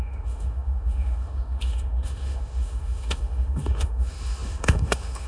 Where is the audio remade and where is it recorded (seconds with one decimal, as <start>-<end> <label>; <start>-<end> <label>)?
0.0-5.3 remade